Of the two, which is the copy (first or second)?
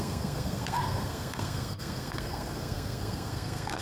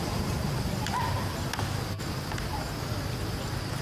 first